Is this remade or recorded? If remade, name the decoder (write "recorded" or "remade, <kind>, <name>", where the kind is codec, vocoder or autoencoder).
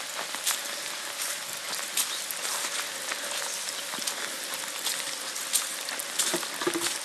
recorded